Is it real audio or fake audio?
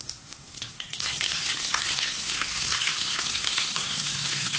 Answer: fake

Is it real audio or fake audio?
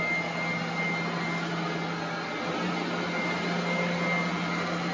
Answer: real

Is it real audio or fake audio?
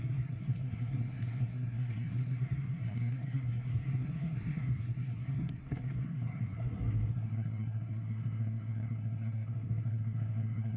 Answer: fake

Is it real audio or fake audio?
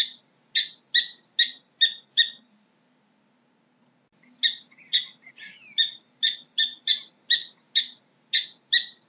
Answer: real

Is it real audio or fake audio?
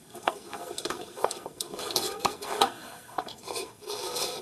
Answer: fake